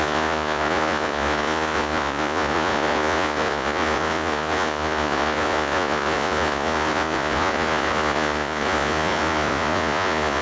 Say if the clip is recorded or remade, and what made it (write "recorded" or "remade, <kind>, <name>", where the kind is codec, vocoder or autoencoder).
remade, vocoder, Vocos